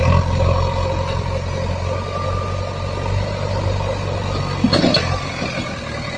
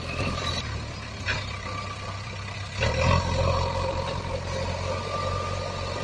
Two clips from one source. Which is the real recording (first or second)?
first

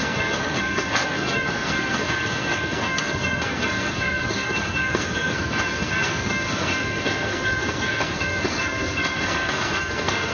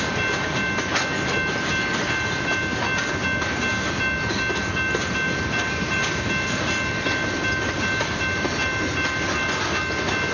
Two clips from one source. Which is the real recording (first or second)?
second